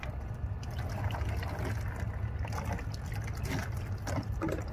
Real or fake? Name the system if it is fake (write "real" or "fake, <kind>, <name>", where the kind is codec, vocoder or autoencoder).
fake, vocoder, BigVGAN v2